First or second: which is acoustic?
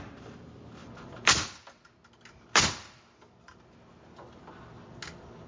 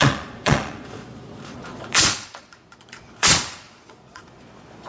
first